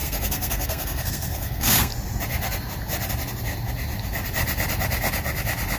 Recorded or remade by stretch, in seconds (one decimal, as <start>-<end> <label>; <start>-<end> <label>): 0.0-1.9 remade; 1.9-5.8 recorded